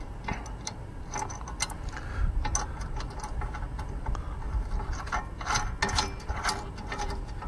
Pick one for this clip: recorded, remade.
recorded